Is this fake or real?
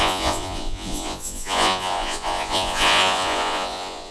fake